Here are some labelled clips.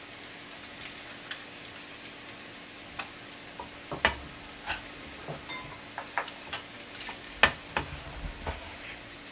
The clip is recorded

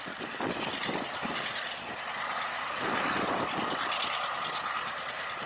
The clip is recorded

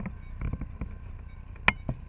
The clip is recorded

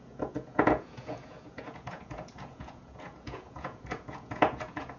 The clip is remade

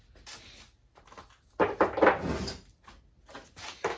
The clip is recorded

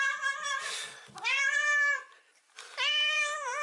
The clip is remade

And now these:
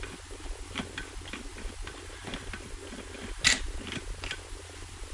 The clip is recorded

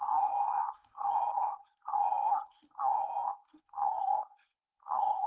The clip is remade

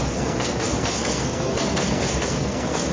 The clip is remade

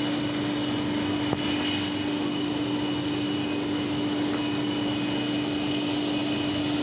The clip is recorded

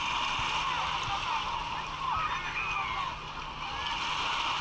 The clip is recorded